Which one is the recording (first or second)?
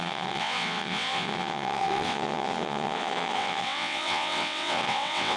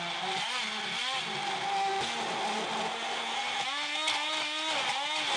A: second